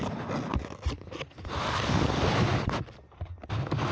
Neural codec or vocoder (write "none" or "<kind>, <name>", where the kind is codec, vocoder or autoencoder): none